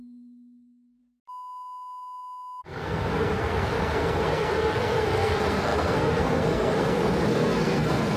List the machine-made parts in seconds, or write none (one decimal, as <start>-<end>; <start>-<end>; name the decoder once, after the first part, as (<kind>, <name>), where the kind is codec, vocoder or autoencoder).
0.0-1.0 (codec, SNAC); 2.6-8.2